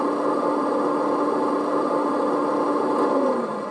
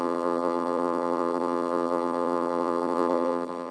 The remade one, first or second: second